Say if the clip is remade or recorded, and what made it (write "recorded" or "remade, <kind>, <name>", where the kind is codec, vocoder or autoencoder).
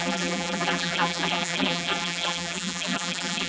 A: remade, vocoder, BigVGAN v2